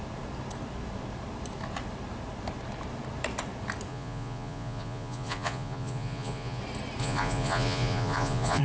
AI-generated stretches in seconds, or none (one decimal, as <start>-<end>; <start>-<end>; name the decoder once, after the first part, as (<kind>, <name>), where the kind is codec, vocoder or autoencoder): 3.9-6.6 (vocoder, Vocos); 7.0-8.6